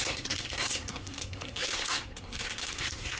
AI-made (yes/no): yes